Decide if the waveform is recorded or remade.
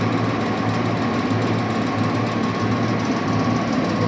recorded